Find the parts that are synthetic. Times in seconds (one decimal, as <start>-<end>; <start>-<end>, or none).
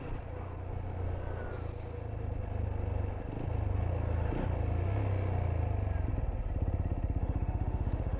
7.2-8.2